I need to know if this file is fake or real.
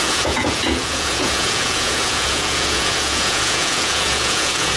fake